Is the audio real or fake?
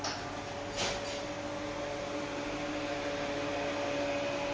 real